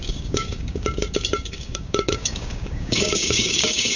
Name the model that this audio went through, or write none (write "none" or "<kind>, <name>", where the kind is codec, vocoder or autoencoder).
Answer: codec, DAC